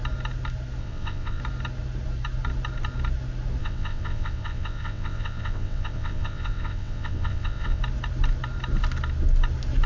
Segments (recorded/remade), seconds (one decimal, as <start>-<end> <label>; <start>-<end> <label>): 0.0-0.8 recorded; 0.8-1.4 remade; 1.4-3.6 recorded; 3.6-7.8 remade; 7.8-9.9 recorded